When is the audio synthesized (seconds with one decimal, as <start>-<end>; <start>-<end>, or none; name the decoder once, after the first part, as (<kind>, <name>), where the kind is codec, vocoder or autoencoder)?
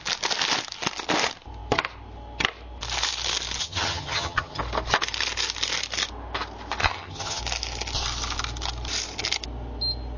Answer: 3.6-4.6 (vocoder, HiFi-GAN); 6.8-7.4